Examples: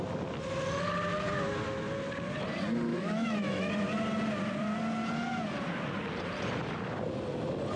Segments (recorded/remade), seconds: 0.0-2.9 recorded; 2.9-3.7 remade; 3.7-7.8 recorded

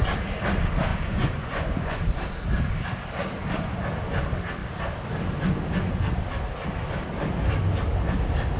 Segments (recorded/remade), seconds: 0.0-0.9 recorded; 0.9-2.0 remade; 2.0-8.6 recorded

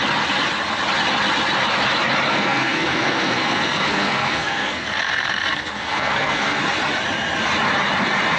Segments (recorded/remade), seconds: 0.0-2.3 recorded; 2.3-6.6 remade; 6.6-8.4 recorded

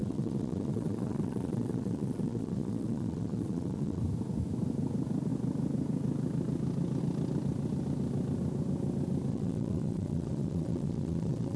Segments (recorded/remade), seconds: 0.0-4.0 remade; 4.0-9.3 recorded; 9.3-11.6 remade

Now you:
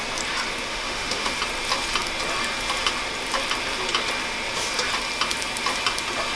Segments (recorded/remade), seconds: 0.0-0.7 recorded; 0.7-1.3 remade; 1.3-6.4 recorded